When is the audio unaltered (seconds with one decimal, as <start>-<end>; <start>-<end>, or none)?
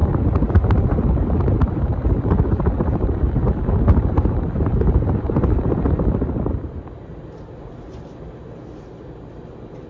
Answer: 0.0-9.9